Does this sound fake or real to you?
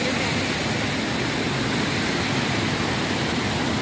real